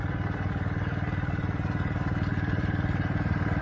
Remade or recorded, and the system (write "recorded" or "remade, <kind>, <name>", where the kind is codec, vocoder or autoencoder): recorded